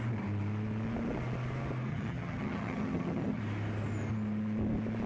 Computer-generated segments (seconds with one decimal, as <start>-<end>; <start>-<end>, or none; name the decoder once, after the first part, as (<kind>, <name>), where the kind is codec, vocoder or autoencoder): 1.9-3.4 (vocoder, HiFi-GAN)